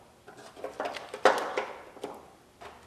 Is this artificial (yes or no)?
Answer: no